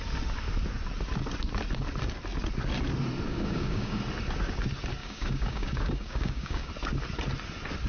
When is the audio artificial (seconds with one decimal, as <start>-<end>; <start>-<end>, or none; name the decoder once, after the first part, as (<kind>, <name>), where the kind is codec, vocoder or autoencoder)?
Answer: 3.3-4.0 (codec, DAC); 5.0-6.7